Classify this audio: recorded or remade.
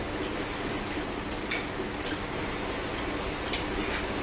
recorded